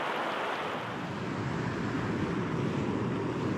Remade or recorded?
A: recorded